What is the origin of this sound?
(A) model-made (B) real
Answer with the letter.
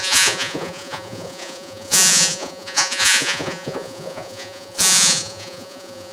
A